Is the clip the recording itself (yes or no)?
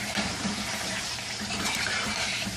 no